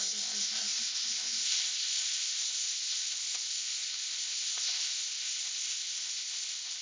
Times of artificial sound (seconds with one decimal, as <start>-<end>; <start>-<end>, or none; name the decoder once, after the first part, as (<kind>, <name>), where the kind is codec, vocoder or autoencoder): 0.0-6.8 (codec, ZipCodec)